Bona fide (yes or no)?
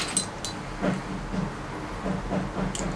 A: yes